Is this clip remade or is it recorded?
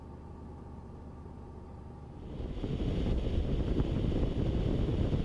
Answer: recorded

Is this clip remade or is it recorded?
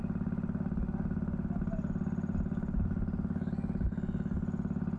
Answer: recorded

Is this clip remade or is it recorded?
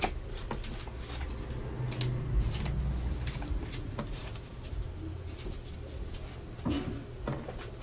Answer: recorded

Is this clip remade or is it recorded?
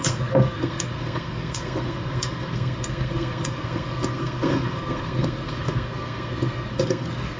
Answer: remade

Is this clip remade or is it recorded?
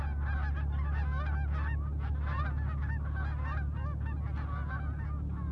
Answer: recorded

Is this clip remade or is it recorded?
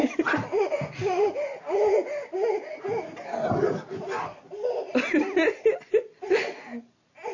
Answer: recorded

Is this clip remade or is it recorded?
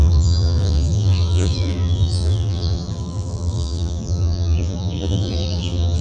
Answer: remade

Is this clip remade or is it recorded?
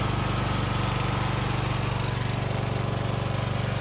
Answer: recorded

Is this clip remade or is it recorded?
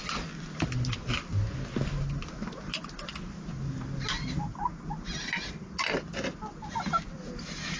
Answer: recorded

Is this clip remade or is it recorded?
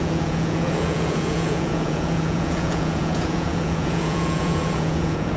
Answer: remade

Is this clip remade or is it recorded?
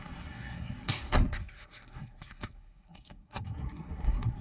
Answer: remade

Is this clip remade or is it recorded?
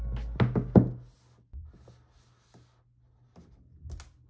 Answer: recorded